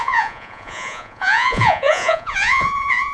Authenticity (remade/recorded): remade